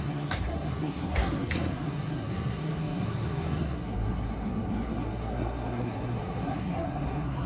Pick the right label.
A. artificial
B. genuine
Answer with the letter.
A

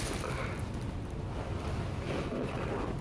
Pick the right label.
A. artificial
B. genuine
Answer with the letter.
B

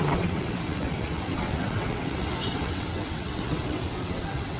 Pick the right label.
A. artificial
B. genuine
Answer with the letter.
A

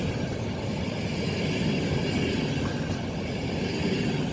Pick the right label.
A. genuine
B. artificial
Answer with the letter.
A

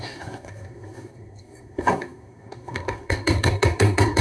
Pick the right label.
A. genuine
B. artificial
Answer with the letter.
B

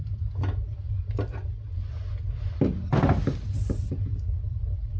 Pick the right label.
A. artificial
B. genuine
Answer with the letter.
B